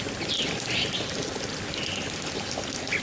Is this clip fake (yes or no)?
no